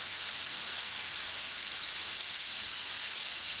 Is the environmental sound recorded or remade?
remade